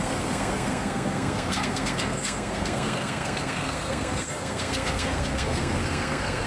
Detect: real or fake fake